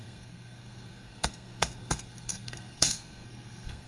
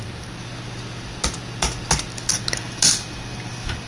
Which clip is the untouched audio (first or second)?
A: second